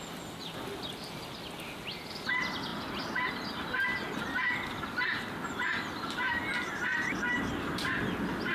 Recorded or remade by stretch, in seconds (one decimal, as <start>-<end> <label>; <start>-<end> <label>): 0.0-8.5 recorded

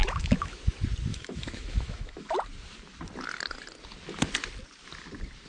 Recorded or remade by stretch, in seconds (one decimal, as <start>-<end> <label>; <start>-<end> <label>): 0.0-0.6 remade; 0.6-1.1 recorded; 1.1-2.3 remade; 2.3-5.5 recorded

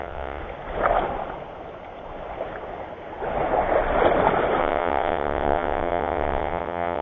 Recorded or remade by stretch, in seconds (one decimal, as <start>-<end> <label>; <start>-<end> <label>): 0.0-0.4 remade; 0.4-4.6 recorded; 4.6-7.0 remade

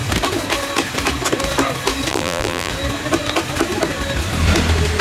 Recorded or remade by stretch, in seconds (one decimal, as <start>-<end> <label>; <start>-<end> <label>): 0.0-2.1 recorded; 2.1-2.7 remade; 2.7-5.0 recorded

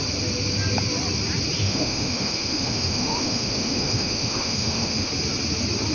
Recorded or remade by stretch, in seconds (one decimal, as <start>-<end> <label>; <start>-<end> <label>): 0.0-1.6 recorded; 1.6-5.1 remade; 5.1-5.9 recorded

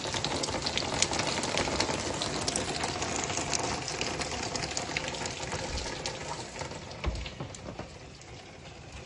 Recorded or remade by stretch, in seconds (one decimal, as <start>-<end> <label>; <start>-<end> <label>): 0.0-9.1 recorded

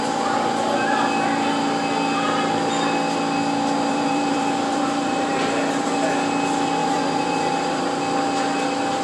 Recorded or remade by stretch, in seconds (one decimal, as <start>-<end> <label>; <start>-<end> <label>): 0.0-3.9 recorded; 3.9-5.9 remade; 5.9-6.8 recorded; 6.8-8.0 remade; 8.0-9.0 recorded

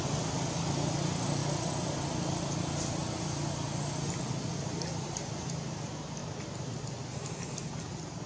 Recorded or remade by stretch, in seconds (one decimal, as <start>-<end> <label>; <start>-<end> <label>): 0.0-8.3 recorded